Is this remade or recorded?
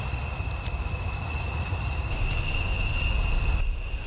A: recorded